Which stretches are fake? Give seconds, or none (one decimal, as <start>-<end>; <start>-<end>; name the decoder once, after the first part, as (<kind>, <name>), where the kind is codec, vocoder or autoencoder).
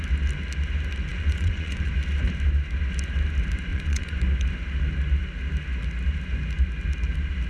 1.1-1.9 (vocoder, Vocos); 3.7-4.2